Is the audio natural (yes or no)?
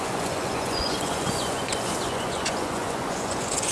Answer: no